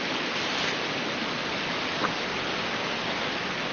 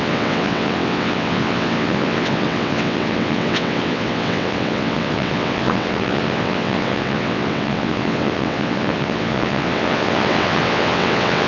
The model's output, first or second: second